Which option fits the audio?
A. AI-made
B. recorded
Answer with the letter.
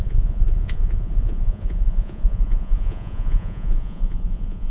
A